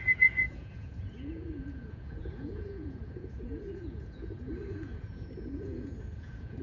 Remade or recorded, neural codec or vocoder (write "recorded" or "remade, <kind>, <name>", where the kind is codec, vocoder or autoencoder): remade, vocoder, Vocos